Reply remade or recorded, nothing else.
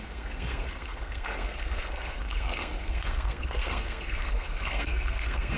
remade